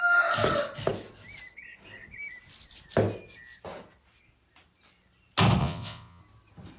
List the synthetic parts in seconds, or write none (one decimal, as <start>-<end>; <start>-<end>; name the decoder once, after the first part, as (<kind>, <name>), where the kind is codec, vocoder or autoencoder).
5.6-6.2 (vocoder, WaveNeXt)